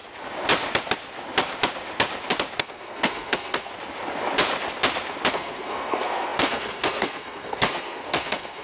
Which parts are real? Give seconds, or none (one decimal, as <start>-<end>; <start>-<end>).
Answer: 0.0-2.6; 3.7-5.3